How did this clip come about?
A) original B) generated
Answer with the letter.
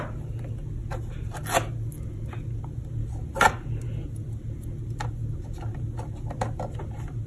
A